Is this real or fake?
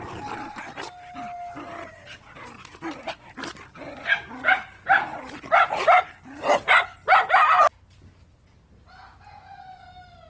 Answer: real